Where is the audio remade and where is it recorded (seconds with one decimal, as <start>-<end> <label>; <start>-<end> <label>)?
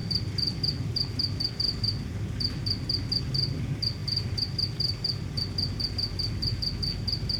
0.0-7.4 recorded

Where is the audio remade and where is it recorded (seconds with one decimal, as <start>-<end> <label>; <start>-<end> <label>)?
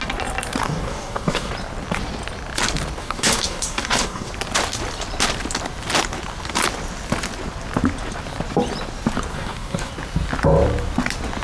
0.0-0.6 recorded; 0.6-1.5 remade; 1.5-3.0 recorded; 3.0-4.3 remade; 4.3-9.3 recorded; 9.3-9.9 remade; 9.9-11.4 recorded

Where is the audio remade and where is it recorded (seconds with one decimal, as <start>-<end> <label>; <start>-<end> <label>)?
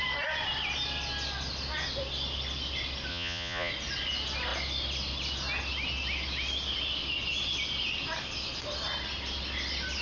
0.0-3.1 recorded; 3.1-3.7 remade; 3.7-10.0 recorded